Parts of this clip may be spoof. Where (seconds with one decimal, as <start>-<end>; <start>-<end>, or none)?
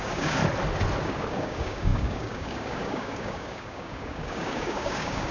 0.0-0.4; 1.0-5.3